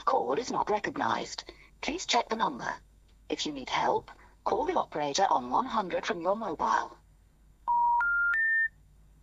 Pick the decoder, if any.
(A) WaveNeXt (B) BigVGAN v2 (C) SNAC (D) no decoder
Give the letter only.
C